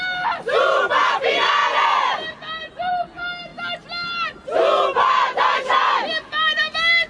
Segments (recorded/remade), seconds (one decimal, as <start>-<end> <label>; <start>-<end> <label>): 0.0-7.1 recorded

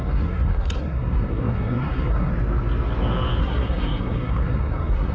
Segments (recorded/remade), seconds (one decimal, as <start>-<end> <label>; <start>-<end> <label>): 0.0-2.3 remade; 2.3-3.4 recorded; 3.4-5.1 remade

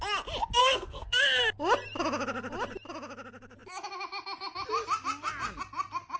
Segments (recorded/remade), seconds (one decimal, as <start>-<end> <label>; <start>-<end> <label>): 0.0-0.6 recorded; 0.6-1.2 remade; 1.2-6.2 recorded

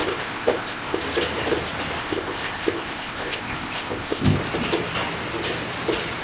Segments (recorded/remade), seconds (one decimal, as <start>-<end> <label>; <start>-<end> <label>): 0.0-1.0 remade; 1.0-2.0 recorded; 2.0-4.4 remade; 4.4-6.2 recorded

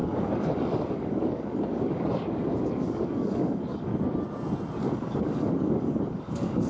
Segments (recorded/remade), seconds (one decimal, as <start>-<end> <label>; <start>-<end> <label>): 0.0-3.9 remade; 3.9-4.8 recorded; 4.8-6.7 remade

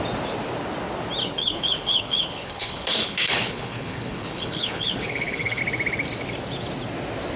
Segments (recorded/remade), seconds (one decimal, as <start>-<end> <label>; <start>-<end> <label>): 0.0-1.2 recorded; 1.2-5.6 remade; 5.6-7.4 recorded